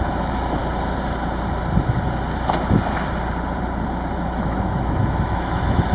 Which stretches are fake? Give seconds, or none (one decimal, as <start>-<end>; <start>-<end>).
0.0-0.6; 4.1-5.9